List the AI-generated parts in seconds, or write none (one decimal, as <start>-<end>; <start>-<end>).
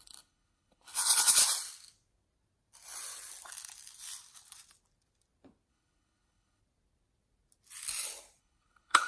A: 0.0-1.4; 5.7-6.6; 8.4-9.1